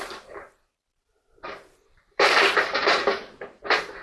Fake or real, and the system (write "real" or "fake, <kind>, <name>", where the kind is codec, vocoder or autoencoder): fake, vocoder, BigVGAN v2